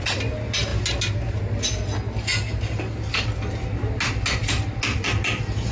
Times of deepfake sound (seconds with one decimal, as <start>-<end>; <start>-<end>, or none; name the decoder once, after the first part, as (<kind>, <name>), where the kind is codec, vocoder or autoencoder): none